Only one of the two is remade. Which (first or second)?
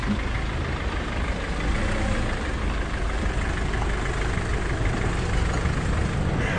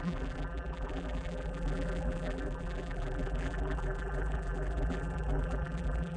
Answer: second